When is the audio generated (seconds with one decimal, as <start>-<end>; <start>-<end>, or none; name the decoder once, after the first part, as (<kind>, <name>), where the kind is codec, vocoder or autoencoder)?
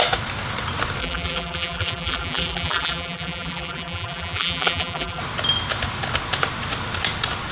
1.0-5.2 (vocoder, BigVGAN v2)